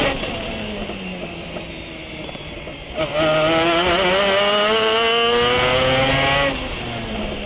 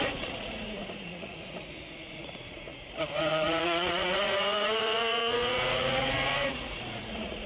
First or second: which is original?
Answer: first